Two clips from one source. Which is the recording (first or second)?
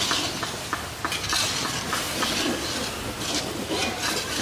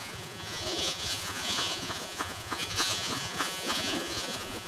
first